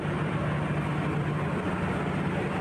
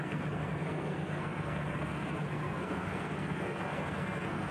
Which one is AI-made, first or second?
second